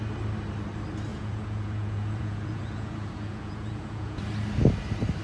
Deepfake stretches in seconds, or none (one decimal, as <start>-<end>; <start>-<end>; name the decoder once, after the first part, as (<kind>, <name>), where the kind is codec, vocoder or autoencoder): 1.1-4.2 (vocoder, Vocos)